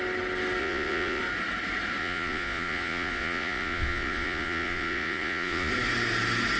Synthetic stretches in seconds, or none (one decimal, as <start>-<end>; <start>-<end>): 0.6-1.2; 2.0-5.7

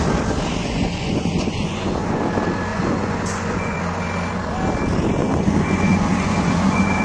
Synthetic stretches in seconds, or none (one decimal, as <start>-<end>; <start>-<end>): 0.6-2.2; 2.7-3.8; 5.2-7.0

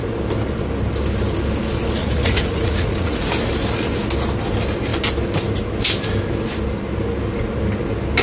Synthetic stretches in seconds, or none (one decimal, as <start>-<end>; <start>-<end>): 2.0-3.3

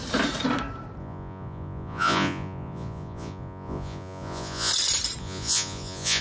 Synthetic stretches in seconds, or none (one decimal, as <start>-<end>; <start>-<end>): 1.0-4.7; 5.2-6.2